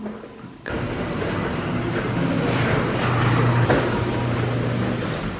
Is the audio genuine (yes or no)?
yes